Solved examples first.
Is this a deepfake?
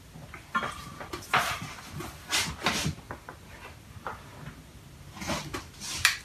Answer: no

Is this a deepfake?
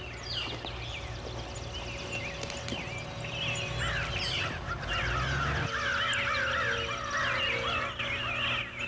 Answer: no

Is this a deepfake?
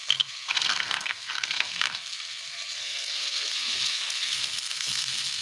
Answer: yes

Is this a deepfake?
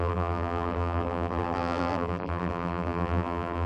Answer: yes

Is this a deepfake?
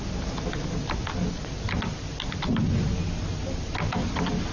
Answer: no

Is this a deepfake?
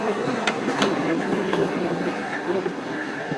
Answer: yes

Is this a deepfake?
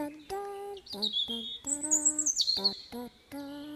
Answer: no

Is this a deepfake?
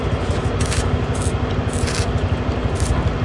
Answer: no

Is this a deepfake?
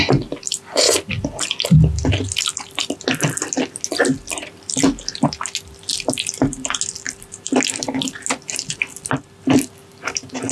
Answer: no